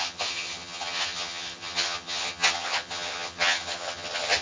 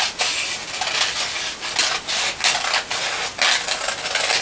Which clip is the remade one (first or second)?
first